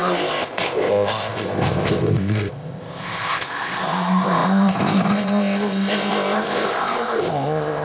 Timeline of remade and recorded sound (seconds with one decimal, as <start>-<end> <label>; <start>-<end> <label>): 0.0-7.8 remade